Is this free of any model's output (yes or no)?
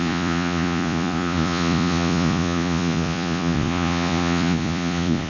no